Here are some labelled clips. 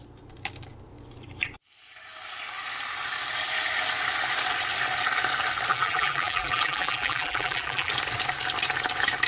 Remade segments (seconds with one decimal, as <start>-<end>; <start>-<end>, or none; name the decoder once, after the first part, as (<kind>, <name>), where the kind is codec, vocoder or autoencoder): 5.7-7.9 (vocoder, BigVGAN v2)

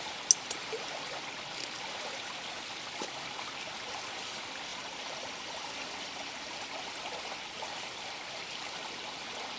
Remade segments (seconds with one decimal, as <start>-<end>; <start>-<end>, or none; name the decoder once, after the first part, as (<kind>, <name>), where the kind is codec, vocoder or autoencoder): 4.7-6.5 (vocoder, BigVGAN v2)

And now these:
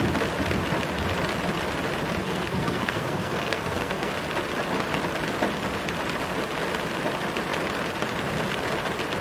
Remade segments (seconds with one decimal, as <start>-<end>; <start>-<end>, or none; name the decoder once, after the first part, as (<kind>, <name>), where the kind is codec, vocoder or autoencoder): 2.2-4.1 (codec, SNAC)